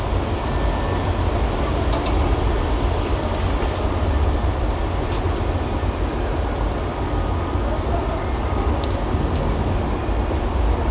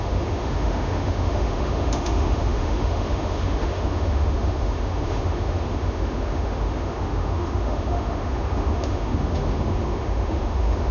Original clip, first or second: first